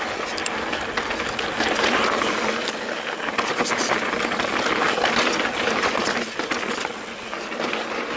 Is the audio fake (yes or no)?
no